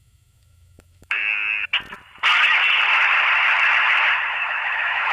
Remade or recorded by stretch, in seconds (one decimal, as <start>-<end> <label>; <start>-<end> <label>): 0.0-1.2 remade; 1.2-4.3 recorded; 4.3-5.1 remade